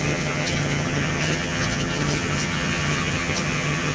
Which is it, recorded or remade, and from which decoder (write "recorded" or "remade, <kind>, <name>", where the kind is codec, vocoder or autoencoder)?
remade, vocoder, HiFi-GAN